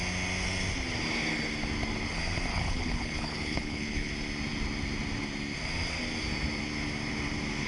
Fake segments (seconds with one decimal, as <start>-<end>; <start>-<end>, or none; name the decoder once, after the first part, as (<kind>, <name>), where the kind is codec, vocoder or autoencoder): 2.5-4.1 (codec, HILCodec)